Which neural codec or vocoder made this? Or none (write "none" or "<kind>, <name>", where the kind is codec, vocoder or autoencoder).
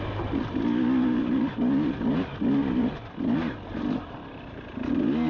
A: none